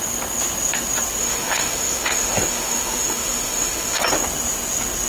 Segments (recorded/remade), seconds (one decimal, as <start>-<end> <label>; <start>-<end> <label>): 0.0-1.2 recorded; 1.2-4.0 remade; 4.0-5.1 recorded